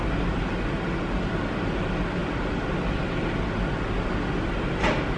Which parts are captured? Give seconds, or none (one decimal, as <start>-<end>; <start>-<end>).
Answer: 0.0-5.2